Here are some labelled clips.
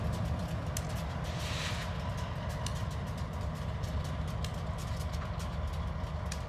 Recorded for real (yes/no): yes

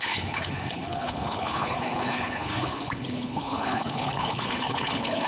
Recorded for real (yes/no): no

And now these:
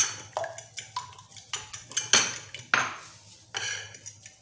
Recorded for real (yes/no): yes